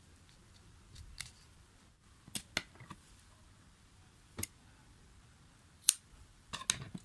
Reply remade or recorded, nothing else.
recorded